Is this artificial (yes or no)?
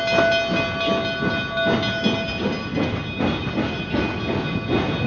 no